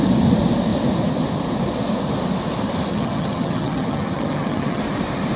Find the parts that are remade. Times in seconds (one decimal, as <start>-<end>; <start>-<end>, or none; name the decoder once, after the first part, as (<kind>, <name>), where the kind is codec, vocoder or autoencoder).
2.9-4.8 (vocoder, HiFi-GAN)